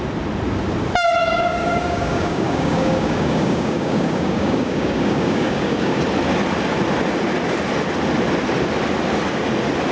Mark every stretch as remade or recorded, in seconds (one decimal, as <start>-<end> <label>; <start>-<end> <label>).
0.0-1.2 recorded; 1.2-6.0 remade; 6.0-9.9 recorded